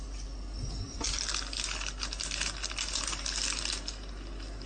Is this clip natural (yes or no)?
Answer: yes